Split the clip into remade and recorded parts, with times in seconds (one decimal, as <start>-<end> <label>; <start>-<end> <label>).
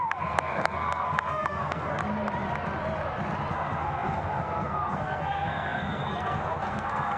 0.0-2.0 remade; 2.0-3.5 recorded; 3.5-7.2 remade